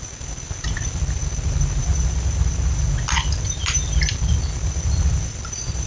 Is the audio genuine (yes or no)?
no